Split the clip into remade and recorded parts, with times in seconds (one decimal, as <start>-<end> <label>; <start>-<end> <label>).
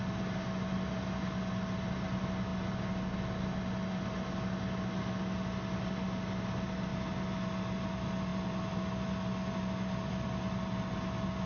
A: 0.0-11.5 recorded